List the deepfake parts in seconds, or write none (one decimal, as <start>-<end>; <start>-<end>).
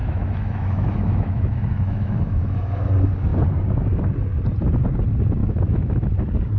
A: 0.0-2.9; 5.4-6.1